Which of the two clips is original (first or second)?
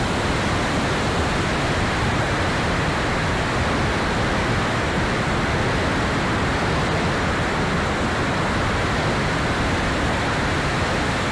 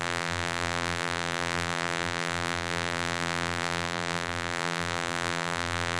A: first